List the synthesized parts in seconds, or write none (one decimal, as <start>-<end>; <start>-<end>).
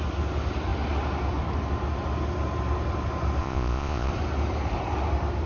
3.4-4.1